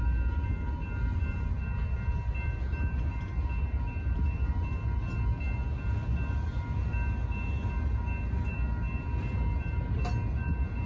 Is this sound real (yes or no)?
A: yes